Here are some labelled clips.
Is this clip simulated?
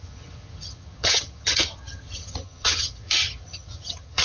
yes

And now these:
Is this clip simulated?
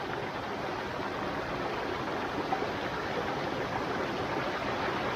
no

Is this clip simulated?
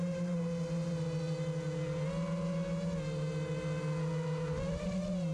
no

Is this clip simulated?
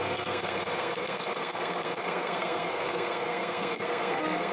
yes